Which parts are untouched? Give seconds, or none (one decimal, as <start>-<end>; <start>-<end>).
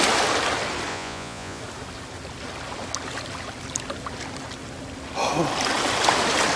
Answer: 0.0-0.9; 1.6-6.6